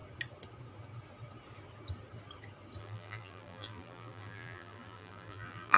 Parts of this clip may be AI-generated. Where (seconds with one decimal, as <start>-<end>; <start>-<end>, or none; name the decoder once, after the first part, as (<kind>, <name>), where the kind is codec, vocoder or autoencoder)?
2.8-5.8 (vocoder, BigVGAN v2)